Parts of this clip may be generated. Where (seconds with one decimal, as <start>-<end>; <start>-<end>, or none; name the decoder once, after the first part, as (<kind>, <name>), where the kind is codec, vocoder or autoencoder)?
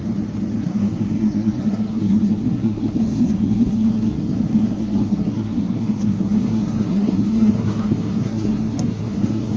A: 0.6-9.6 (codec, SNAC)